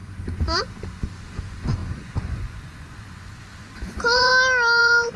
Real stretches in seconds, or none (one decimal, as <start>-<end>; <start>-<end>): 4.3-4.8